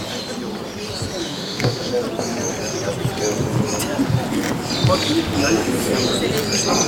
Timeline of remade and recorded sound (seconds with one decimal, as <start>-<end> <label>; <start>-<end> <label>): 0.0-1.2 recorded; 1.2-1.9 remade; 1.9-6.9 recorded